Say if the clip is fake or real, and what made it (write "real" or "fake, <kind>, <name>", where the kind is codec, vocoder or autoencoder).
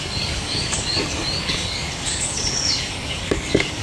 fake, codec, DAC